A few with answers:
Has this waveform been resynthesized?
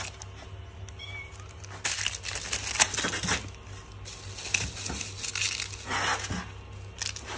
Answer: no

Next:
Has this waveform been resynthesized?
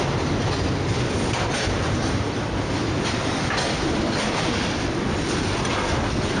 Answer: no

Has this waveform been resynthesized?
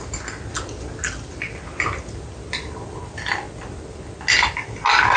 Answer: no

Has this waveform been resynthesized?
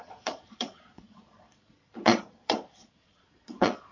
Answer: yes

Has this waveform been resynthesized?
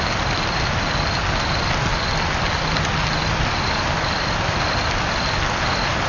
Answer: no